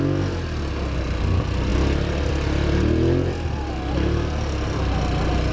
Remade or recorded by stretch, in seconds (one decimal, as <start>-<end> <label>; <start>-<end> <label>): 0.0-5.5 recorded